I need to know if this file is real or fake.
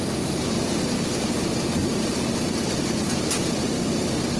fake